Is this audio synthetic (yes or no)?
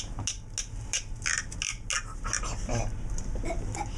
no